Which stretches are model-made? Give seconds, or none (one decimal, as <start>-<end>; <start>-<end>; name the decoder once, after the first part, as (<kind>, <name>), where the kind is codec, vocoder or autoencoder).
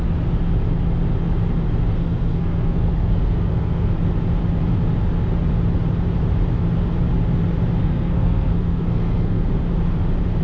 1.9-3.9 (codec, SNAC); 7.8-9.5